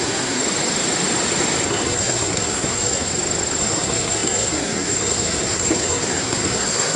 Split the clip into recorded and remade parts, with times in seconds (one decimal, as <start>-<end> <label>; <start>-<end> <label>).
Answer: 0.0-0.4 remade; 0.4-1.7 recorded; 1.7-3.1 remade; 3.1-3.6 recorded; 3.6-7.0 remade